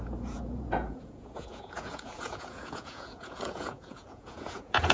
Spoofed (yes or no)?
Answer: yes